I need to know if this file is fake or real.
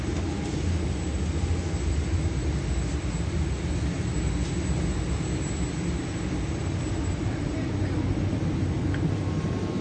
real